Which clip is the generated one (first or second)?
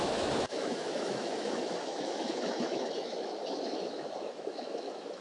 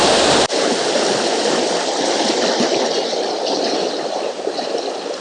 first